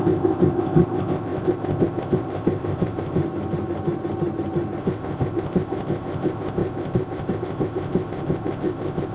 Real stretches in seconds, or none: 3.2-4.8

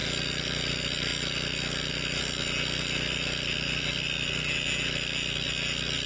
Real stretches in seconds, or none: 0.0-6.1